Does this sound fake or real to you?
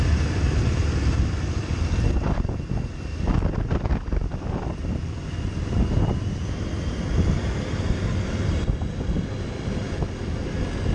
real